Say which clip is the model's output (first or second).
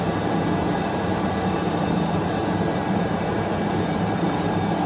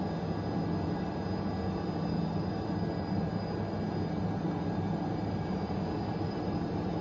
first